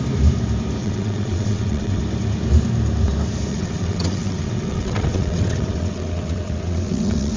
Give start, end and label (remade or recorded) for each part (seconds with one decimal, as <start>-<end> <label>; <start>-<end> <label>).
0.0-0.8 recorded; 0.8-2.0 remade; 2.0-3.5 recorded; 3.5-7.4 remade